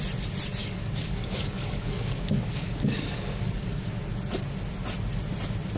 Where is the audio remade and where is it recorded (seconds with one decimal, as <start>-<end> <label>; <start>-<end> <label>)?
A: 0.0-0.6 recorded; 0.6-4.0 remade; 4.0-5.8 recorded